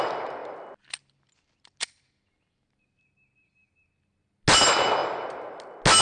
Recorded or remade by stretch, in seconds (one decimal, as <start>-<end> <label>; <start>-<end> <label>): 0.0-6.0 recorded